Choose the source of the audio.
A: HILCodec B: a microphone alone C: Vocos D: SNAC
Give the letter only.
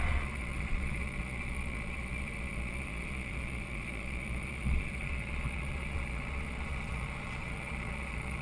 C